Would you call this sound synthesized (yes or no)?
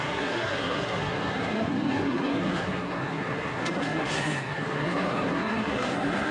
yes